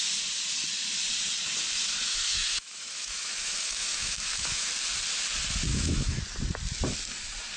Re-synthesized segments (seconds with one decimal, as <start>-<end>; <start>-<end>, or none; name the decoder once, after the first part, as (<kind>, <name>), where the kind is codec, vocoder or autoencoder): 2.1-4.7 (autoencoder, DAC-VAE); 5.7-6.2